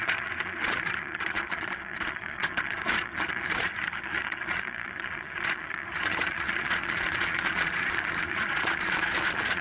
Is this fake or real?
fake